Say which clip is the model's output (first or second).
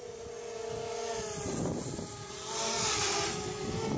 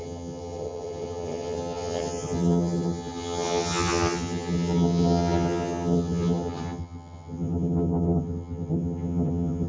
second